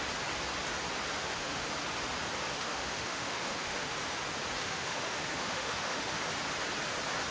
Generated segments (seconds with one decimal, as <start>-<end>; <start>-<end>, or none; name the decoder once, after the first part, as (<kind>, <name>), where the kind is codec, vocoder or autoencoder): 1.1-1.7 (autoencoder, DAC-VAE); 2.5-3.9; 4.6-6.2